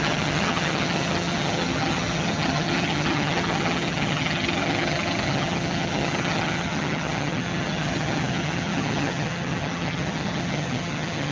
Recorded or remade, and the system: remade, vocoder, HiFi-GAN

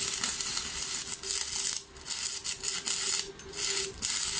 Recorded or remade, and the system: recorded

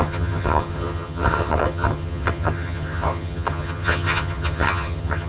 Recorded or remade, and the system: remade, vocoder, HiFi-GAN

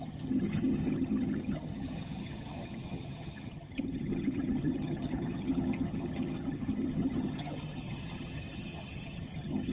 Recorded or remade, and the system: remade, vocoder, HiFi-GAN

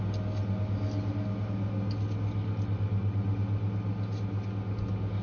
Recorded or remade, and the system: recorded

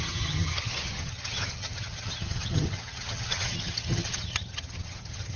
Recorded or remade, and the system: remade, vocoder, HiFi-GAN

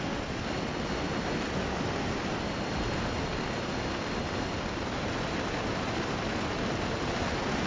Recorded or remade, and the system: recorded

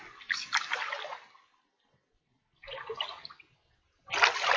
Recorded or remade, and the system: recorded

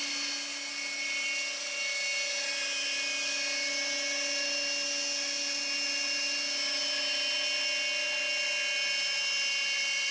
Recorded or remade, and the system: recorded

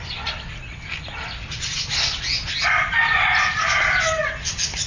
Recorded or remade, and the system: recorded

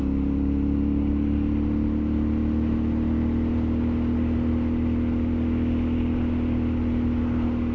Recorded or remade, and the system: recorded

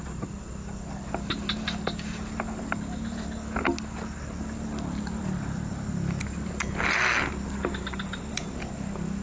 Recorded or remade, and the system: recorded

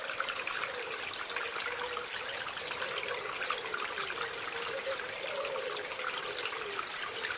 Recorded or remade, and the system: recorded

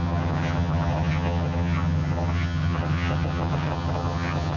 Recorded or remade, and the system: remade, vocoder, HiFi-GAN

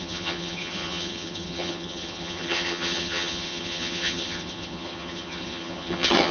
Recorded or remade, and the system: remade, vocoder, HiFi-GAN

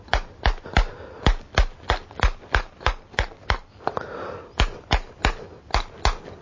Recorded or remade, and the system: recorded